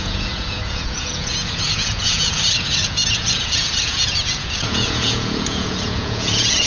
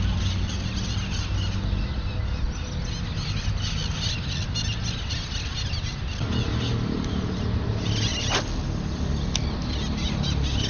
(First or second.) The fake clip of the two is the first